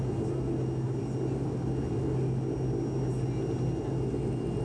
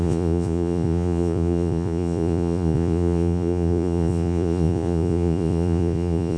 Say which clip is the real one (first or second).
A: first